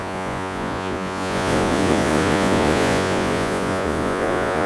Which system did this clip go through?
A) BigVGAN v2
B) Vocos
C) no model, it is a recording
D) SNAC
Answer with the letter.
B